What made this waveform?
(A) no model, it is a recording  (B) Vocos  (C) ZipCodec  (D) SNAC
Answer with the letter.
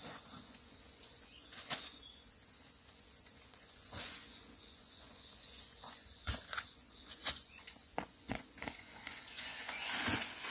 B